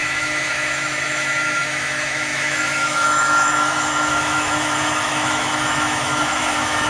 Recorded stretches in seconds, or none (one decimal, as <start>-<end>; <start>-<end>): none